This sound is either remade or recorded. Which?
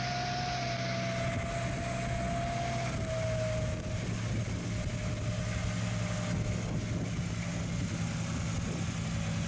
recorded